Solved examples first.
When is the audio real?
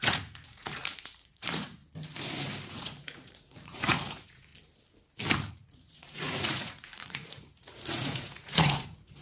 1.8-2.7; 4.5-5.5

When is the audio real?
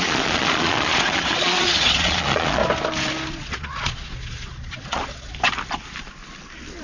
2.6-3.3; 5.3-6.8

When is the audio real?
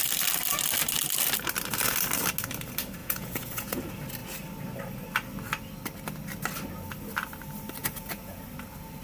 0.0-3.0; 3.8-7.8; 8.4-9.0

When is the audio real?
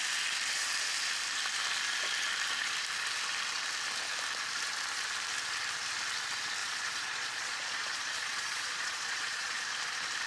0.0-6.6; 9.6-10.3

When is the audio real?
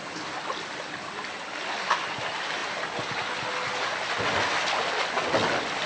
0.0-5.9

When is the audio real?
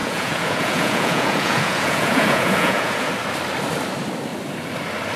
3.1-5.2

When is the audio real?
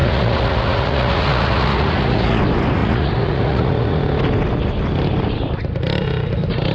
2.4-2.8; 4.0-6.7